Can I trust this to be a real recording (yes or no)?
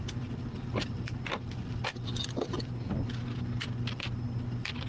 yes